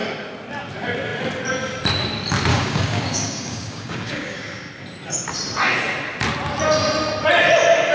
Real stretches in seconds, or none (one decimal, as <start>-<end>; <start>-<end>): 0.0-2.5; 4.7-7.9